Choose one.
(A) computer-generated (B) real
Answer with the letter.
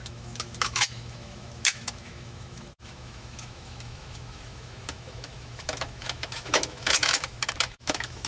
A